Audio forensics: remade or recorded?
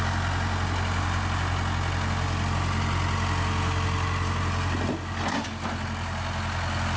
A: recorded